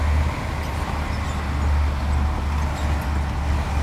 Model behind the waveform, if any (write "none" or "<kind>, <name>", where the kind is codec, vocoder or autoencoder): none